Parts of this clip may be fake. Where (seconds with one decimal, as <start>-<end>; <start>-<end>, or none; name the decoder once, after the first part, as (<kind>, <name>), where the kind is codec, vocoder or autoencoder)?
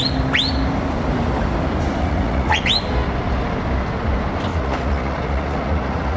2.0-2.6 (vocoder, Vocos); 4.5-6.2